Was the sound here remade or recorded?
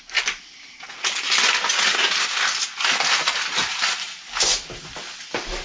recorded